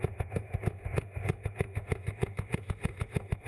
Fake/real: fake